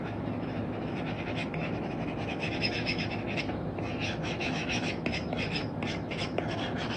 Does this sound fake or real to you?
fake